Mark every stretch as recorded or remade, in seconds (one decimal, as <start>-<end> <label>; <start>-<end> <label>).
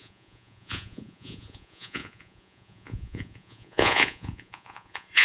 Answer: 0.0-5.2 remade